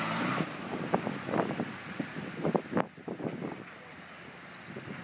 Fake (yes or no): no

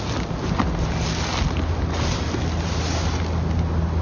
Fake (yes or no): no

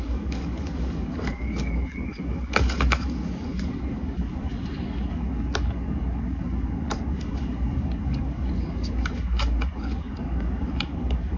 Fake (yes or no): yes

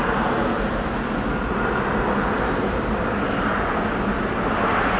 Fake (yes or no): no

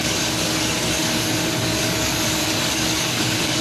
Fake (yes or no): yes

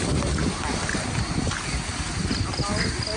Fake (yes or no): no